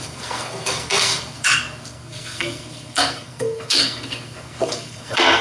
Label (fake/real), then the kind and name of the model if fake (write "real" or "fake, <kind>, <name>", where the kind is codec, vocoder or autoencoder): fake, codec, SNAC